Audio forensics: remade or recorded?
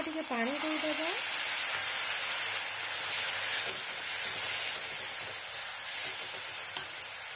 recorded